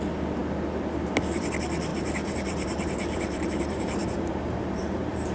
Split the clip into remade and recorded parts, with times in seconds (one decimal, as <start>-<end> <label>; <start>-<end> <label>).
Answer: 0.0-1.9 recorded; 1.9-5.3 remade